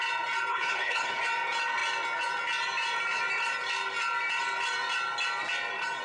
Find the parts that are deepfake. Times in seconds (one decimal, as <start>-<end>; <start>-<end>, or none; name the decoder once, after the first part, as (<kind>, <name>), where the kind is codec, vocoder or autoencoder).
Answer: 0.5-1.2 (codec, HILCodec)